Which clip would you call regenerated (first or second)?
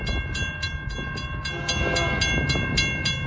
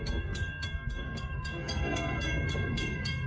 second